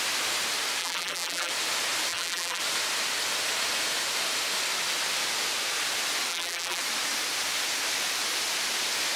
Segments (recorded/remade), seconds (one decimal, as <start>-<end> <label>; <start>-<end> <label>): 0.0-0.8 recorded; 0.8-1.5 remade; 1.5-2.1 recorded; 2.1-2.6 remade; 2.6-6.3 recorded; 6.3-6.8 remade; 6.8-9.2 recorded